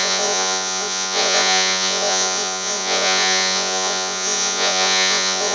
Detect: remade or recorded remade